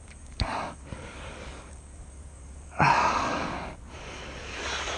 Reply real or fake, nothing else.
fake